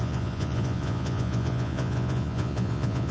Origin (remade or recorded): remade